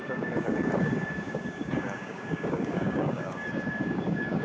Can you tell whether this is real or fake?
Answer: fake